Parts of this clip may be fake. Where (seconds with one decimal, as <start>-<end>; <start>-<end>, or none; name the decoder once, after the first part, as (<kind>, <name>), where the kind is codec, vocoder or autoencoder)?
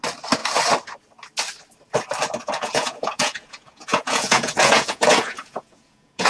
2.4-6.3 (vocoder, Vocos)